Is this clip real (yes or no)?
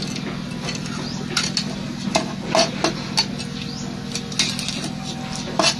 yes